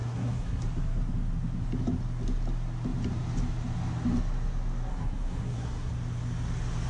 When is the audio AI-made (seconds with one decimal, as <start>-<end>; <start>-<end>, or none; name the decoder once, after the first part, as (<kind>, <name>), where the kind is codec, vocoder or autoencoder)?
0.0-0.6 (codec, SNAC); 4.9-5.9